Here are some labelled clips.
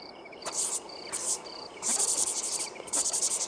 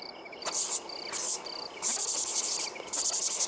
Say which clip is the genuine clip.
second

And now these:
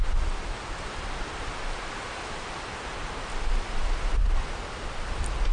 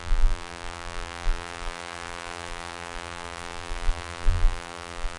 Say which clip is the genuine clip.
first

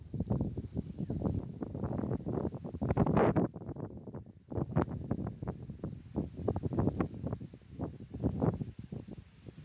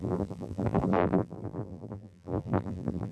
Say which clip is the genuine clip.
first